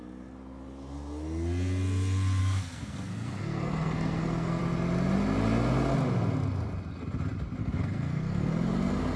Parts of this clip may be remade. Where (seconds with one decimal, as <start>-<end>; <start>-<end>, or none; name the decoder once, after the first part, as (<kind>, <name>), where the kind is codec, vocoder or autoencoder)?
2.4-4.6 (codec, SNAC); 7.6-8.5